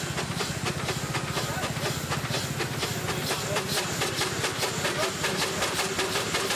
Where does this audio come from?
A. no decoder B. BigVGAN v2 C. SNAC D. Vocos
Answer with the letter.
A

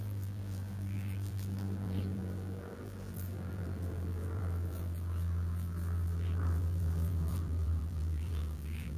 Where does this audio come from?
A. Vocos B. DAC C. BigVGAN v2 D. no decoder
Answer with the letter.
C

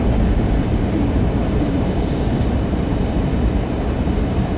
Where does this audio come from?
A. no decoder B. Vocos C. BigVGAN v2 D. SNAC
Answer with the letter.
C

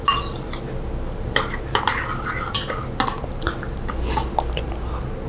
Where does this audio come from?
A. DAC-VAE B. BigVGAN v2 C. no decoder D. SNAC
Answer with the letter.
C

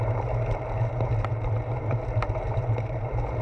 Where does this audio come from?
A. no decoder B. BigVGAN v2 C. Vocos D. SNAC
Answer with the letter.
B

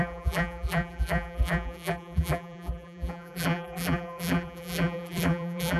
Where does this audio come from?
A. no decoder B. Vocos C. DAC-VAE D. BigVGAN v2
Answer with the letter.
D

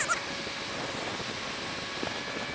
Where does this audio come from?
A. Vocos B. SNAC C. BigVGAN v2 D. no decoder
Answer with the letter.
D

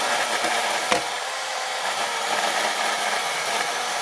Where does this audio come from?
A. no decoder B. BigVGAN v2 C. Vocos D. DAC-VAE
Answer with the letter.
B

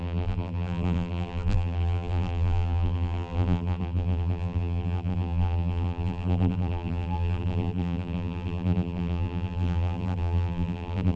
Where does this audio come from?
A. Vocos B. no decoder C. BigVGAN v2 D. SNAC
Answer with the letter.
C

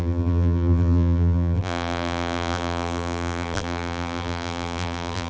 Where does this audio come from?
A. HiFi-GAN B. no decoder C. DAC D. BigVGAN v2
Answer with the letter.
D